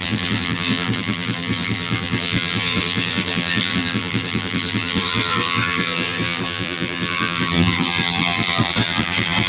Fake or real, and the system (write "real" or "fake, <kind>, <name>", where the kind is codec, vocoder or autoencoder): fake, vocoder, BigVGAN v2